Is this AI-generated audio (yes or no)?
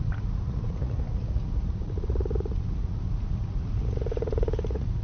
yes